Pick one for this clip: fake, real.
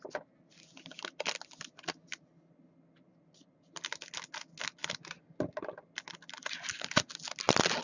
real